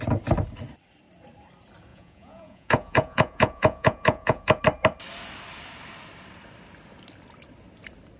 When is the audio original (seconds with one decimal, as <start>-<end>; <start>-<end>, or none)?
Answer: 0.0-1.9; 4.6-8.2